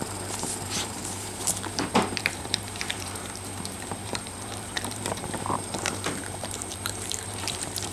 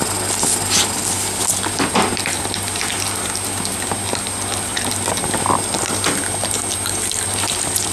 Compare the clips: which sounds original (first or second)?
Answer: second